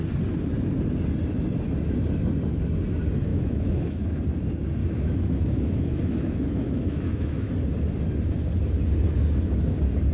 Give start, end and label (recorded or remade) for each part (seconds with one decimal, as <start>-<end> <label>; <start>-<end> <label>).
0.0-3.3 recorded; 3.3-4.2 remade; 4.2-4.8 recorded; 4.8-7.5 remade; 7.5-10.1 recorded